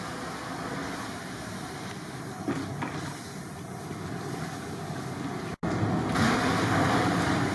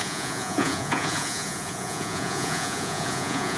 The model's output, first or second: second